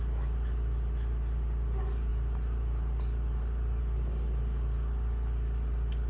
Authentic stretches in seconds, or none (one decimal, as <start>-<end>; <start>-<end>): 0.0-6.1